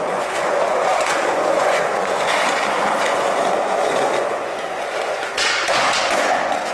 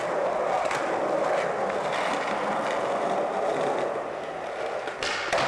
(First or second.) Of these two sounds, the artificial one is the first